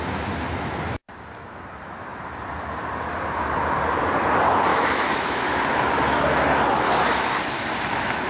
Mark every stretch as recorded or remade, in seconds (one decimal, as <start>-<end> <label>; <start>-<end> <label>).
0.0-4.7 recorded; 4.7-5.6 remade; 5.6-8.3 recorded

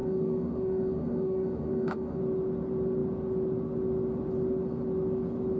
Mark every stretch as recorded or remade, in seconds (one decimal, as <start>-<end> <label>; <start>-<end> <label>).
0.0-2.2 remade; 2.2-5.6 recorded

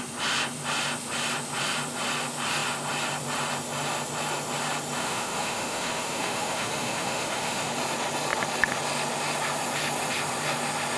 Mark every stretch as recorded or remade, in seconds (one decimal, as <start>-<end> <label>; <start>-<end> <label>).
0.0-5.0 recorded; 5.0-7.7 remade; 7.7-11.0 recorded

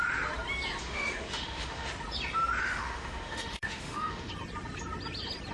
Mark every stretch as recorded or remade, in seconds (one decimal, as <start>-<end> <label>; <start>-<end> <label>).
0.0-0.8 recorded; 0.8-1.9 remade; 1.9-2.6 recorded; 2.6-4.3 remade; 4.3-5.5 recorded

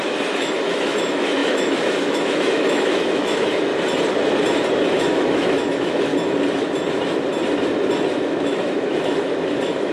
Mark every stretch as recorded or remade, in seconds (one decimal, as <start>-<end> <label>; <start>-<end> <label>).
0.0-3.7 remade; 3.7-4.9 recorded; 4.9-6.1 remade; 6.1-8.1 recorded; 8.1-9.9 remade

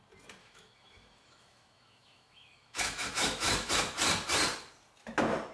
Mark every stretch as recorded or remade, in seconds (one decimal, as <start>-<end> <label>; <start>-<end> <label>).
0.0-0.4 recorded; 0.4-3.7 remade; 3.7-5.5 recorded

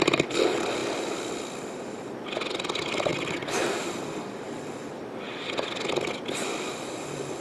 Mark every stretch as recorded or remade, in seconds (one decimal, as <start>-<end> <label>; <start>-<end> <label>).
0.0-7.4 recorded

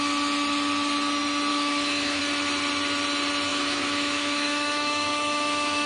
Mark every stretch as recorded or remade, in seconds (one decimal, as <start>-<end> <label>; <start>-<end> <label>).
0.0-1.5 recorded; 1.5-2.2 remade; 2.2-3.5 recorded; 3.5-5.9 remade